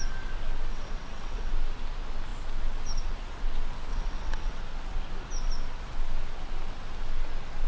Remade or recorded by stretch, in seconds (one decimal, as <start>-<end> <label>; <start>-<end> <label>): 0.0-0.7 recorded; 0.7-1.5 remade; 1.5-3.9 recorded; 3.9-4.6 remade; 4.6-7.7 recorded

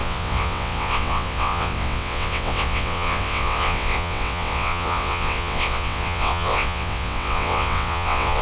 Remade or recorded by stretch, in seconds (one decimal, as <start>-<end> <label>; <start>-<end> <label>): 0.0-8.4 remade